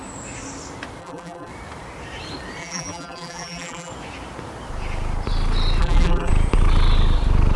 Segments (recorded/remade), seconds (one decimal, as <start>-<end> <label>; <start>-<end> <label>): 0.0-1.0 recorded; 1.0-1.5 remade; 1.5-2.6 recorded; 2.6-3.9 remade; 3.9-5.8 recorded; 5.8-6.3 remade; 6.3-7.6 recorded